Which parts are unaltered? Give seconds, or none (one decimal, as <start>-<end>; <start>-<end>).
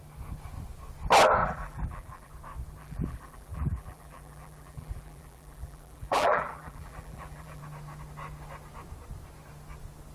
0.0-1.4; 2.3-2.8; 7.6-10.1